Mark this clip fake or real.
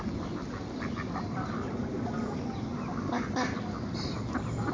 real